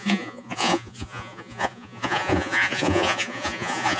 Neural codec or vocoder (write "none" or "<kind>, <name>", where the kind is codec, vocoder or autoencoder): vocoder, Vocos